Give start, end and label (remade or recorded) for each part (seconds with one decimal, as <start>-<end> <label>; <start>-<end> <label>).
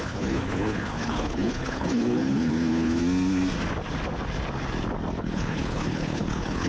0.0-3.0 remade; 3.0-5.2 recorded; 5.2-6.7 remade